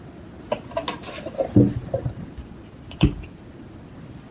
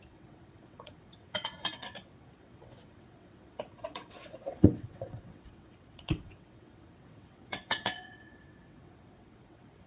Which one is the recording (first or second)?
first